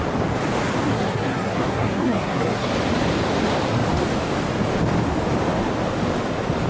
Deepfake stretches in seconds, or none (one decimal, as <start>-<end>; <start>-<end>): 0.9-2.7